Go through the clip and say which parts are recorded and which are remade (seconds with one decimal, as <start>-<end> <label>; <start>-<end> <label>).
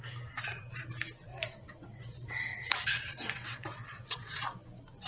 0.0-1.3 recorded; 1.3-4.4 remade; 4.4-5.1 recorded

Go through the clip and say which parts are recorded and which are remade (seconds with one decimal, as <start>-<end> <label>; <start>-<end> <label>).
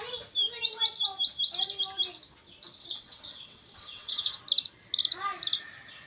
0.0-2.8 recorded; 2.8-4.4 remade; 4.4-6.1 recorded